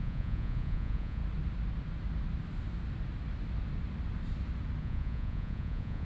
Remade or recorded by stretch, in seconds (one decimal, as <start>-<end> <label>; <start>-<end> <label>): 0.0-1.2 remade; 1.2-4.8 recorded; 4.8-6.0 remade